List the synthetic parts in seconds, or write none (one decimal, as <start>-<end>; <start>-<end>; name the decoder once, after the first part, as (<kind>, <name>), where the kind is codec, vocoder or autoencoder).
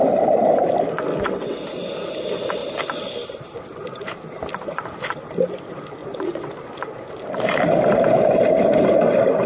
1.1-1.6 (vocoder, WaveNeXt); 6.0-6.5